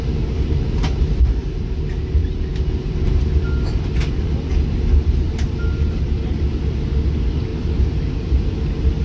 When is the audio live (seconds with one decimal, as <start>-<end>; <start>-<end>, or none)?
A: 0.0-9.0